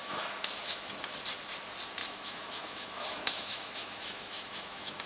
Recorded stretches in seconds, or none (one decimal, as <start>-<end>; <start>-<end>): 0.9-2.0